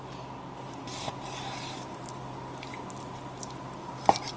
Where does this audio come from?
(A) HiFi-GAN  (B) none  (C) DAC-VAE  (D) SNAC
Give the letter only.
B